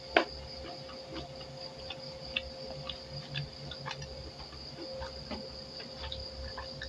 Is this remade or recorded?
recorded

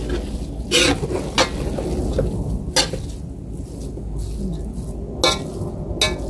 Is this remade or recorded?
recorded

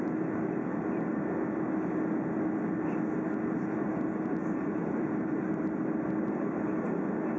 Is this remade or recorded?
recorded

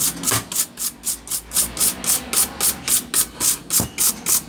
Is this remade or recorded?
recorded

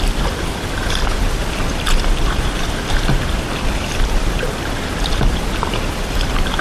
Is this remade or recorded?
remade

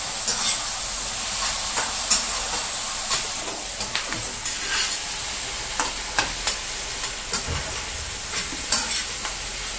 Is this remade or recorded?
recorded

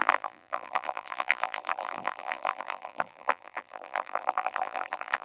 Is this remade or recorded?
remade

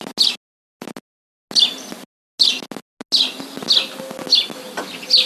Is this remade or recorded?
recorded